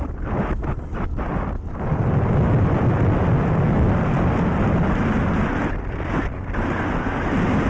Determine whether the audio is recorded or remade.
recorded